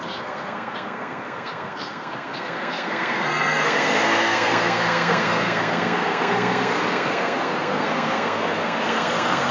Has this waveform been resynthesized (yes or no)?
yes